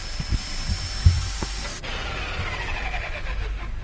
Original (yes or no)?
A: yes